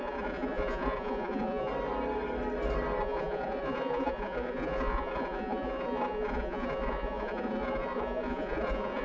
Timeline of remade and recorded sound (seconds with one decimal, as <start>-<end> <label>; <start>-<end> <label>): 0.0-1.7 remade; 1.7-3.0 recorded; 3.0-9.0 remade